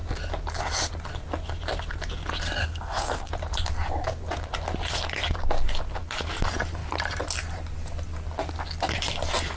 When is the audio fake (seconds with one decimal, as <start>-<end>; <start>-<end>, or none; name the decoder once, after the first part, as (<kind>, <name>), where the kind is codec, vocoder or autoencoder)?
2.6-3.3 (codec, SNAC)